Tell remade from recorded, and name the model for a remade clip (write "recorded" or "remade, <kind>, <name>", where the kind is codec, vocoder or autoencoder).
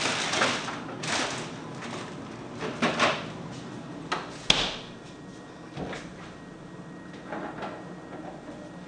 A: recorded